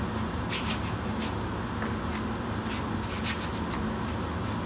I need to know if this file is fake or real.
real